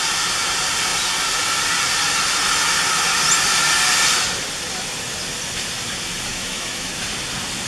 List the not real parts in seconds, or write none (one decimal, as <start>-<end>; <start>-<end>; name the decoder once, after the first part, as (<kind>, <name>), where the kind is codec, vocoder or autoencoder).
6.3-6.9 (autoencoder, DAC-VAE)